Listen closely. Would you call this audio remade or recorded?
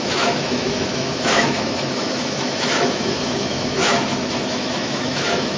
remade